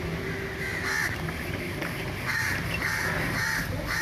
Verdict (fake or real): real